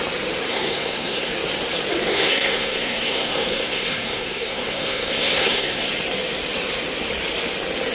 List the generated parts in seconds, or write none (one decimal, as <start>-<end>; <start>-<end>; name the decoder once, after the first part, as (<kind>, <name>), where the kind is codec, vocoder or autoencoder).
0.5-1.3 (codec, SNAC); 2.1-5.9